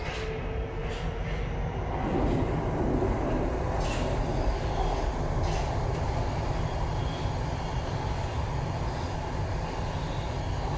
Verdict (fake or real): real